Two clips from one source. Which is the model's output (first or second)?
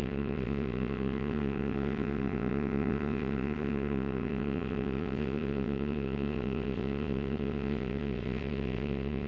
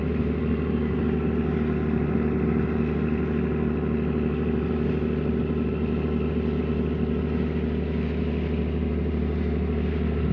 first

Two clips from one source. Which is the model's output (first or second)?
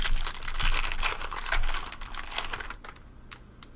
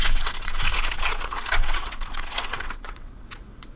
second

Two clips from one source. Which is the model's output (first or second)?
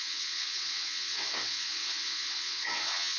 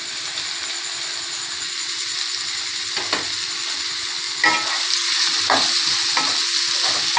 first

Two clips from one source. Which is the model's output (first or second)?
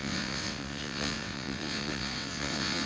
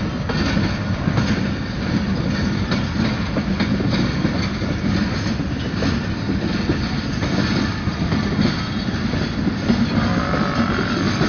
first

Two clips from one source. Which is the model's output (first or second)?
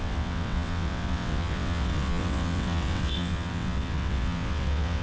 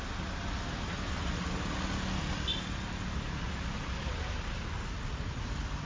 first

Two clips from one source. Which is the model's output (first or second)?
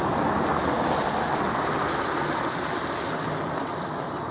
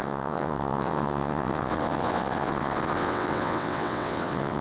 second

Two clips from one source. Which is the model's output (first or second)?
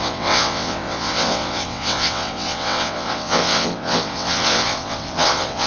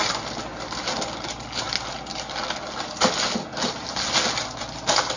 first